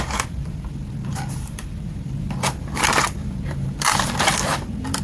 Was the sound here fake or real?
fake